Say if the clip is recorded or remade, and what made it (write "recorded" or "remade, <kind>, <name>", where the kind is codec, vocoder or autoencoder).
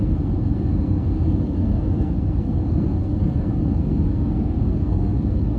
remade, codec, SNAC